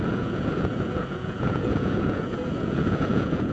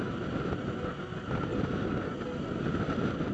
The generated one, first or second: first